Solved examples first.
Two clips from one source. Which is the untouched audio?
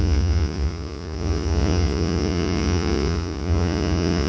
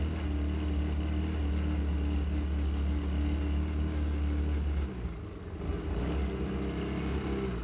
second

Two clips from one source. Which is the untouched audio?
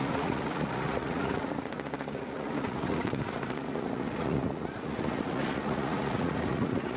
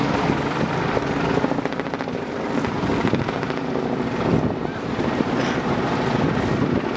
second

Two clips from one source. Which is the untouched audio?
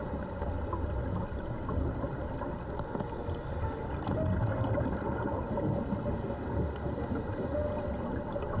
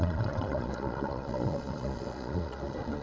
first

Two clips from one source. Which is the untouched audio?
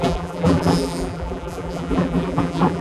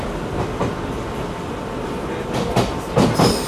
second